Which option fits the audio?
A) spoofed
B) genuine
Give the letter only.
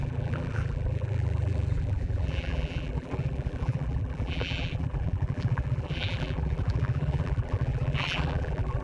A